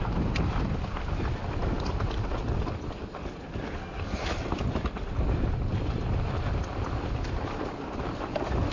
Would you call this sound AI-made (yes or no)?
no